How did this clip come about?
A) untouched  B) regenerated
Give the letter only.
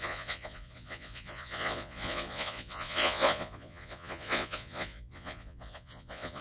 B